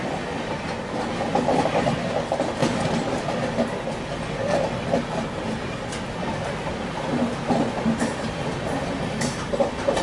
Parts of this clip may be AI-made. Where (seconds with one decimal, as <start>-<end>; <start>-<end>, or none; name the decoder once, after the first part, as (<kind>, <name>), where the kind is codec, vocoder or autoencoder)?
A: none